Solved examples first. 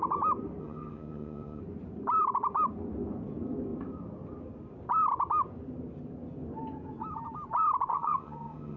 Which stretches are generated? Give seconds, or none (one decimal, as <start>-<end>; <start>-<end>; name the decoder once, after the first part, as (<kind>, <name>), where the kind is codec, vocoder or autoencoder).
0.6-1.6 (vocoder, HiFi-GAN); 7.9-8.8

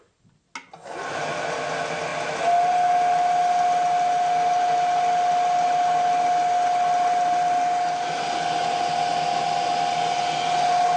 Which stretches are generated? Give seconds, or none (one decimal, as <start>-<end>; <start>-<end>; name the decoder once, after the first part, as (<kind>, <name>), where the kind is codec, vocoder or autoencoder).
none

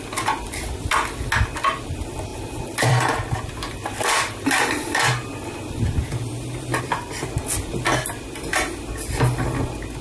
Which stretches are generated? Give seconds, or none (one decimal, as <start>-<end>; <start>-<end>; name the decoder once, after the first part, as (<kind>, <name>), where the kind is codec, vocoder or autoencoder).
2.3-6.8 (vocoder, BigVGAN v2)